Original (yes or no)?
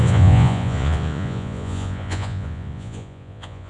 no